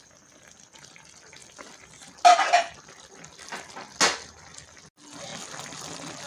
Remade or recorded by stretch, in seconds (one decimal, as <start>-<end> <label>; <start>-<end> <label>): 0.0-6.3 recorded